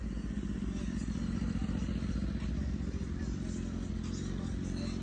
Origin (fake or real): real